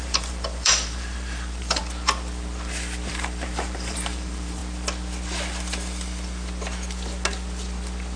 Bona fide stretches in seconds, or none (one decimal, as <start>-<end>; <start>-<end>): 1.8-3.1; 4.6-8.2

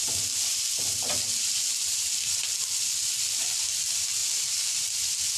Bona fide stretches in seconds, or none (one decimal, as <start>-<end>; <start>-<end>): 0.7-4.2; 4.8-5.4

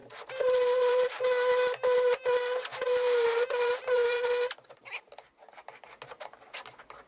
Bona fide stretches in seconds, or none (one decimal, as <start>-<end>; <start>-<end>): 1.2-2.7; 5.1-7.1

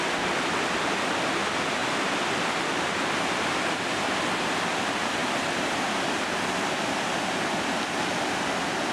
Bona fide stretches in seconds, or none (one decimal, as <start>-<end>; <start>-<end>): 0.0-1.8; 4.1-5.2; 5.7-8.9

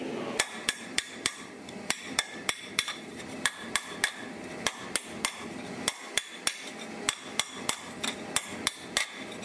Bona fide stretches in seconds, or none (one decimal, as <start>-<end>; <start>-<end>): 0.0-0.6; 3.2-9.4